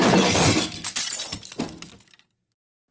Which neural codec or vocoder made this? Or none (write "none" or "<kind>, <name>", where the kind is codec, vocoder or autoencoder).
none